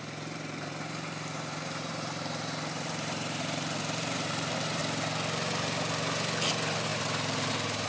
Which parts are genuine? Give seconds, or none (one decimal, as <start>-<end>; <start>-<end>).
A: 4.8-6.5